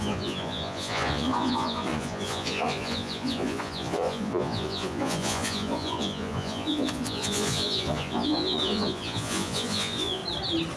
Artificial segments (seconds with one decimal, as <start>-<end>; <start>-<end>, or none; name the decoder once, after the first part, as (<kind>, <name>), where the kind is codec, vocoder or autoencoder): 0.0-10.2 (vocoder, Vocos)

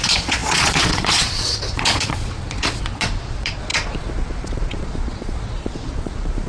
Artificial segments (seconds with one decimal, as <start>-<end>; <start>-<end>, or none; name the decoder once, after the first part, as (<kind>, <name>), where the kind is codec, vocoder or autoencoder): 0.0-6.5 (vocoder, Vocos)

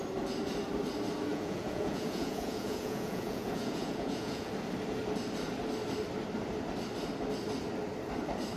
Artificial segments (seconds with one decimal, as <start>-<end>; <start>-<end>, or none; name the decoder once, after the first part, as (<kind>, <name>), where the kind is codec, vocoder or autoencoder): 1.3-4.5 (vocoder, Vocos)

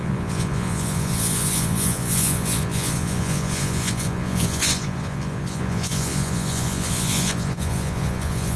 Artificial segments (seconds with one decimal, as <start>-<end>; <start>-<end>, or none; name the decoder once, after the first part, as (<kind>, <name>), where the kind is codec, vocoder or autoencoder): 0.0-8.6 (vocoder, Vocos)

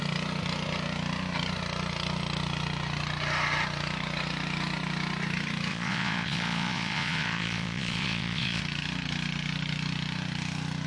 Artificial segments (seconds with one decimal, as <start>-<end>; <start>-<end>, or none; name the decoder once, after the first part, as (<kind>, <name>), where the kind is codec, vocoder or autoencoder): 5.7-8.6 (vocoder, Vocos)

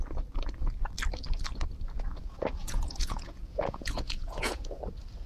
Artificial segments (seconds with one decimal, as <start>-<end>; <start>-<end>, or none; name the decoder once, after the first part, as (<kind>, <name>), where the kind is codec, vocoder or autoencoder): 2.6-4.8 (vocoder, Vocos)